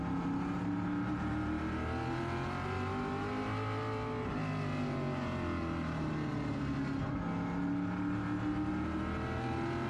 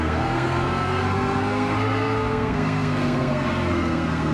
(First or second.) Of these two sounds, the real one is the first